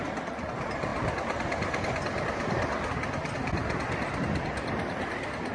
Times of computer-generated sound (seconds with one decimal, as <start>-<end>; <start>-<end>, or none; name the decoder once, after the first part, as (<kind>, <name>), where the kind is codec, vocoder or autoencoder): none